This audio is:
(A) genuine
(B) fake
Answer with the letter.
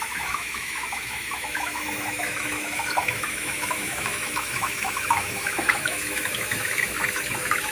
B